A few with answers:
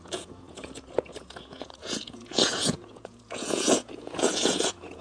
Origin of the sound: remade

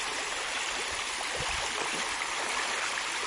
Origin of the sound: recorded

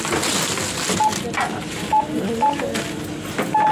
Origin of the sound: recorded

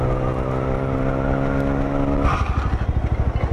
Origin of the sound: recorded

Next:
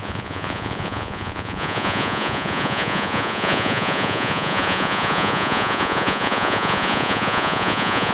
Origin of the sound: remade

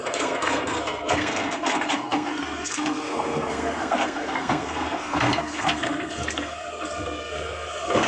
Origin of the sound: remade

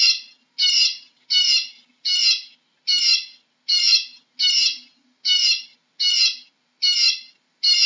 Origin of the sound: recorded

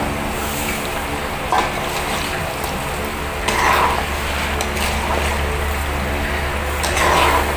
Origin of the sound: recorded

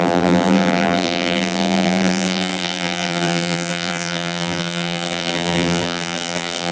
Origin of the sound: remade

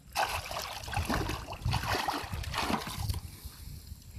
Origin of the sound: recorded